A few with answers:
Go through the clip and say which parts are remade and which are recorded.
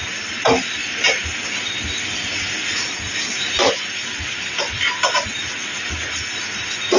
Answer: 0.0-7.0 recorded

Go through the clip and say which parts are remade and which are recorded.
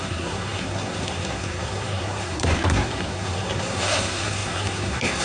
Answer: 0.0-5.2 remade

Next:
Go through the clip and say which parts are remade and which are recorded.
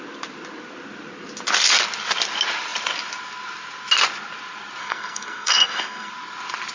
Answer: 0.0-4.8 recorded; 4.8-6.1 remade; 6.1-6.7 recorded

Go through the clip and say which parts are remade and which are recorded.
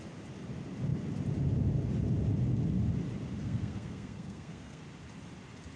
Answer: 0.0-3.4 recorded; 3.4-4.8 remade; 4.8-5.8 recorded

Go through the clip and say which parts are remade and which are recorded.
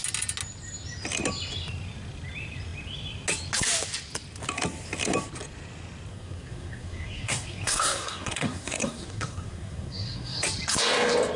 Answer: 0.0-6.1 recorded; 6.1-10.4 remade; 10.4-11.4 recorded